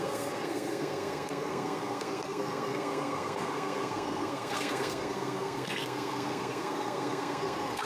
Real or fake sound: fake